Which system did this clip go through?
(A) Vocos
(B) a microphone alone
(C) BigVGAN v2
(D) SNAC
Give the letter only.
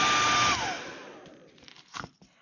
B